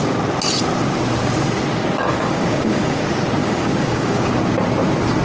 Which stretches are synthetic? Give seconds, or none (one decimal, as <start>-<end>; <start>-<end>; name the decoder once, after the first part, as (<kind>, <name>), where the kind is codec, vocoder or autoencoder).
2.1-3.0 (codec, DAC); 3.4-4.3